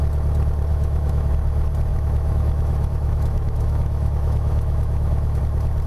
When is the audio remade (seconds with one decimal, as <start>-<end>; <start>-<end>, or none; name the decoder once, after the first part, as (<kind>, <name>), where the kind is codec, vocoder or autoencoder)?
0.7-1.3 (autoencoder, DAC-VAE); 1.9-5.4